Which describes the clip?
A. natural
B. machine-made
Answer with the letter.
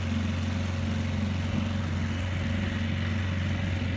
A